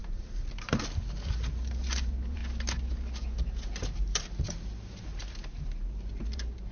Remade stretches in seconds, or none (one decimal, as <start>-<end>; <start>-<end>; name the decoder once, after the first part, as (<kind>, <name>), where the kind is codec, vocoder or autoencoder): 0.0-2.4 (vocoder, BigVGAN v2); 3.2-6.7